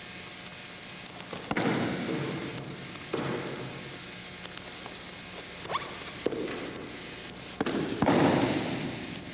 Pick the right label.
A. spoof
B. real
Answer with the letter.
B